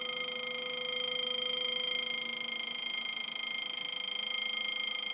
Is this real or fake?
real